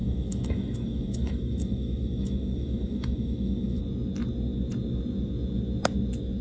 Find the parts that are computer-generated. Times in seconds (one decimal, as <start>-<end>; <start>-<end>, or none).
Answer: 0.0-3.8